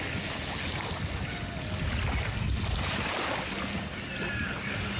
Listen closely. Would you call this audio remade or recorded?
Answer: recorded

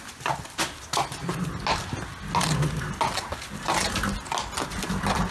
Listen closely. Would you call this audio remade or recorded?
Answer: recorded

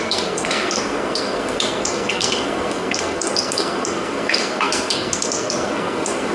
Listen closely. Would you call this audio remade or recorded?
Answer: remade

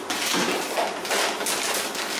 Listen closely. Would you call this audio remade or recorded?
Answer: recorded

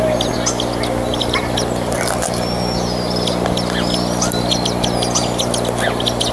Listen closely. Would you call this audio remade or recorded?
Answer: recorded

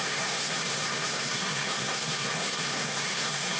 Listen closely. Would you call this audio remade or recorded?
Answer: remade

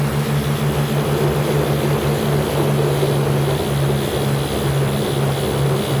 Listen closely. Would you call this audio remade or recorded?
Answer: recorded